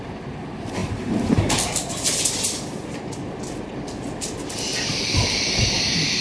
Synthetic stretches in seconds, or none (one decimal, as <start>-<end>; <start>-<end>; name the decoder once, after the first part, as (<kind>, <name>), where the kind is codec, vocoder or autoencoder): none